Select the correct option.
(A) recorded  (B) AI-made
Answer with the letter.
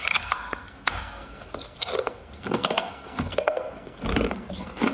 B